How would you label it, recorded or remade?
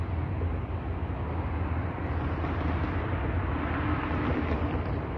recorded